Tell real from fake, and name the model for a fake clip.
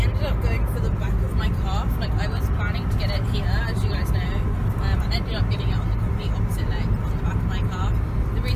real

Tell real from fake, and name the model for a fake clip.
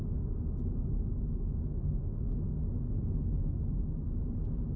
real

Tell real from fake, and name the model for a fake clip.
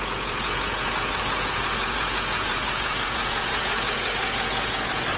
fake, vocoder, Vocos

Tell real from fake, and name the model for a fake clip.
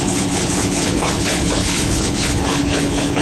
fake, codec, HILCodec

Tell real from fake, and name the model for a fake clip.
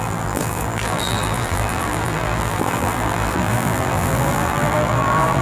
fake, vocoder, BigVGAN v2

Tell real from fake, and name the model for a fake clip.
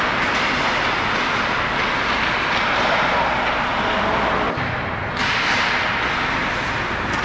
real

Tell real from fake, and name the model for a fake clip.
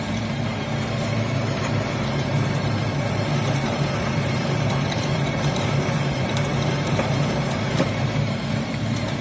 fake, vocoder, BigVGAN v2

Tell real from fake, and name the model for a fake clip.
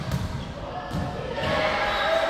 real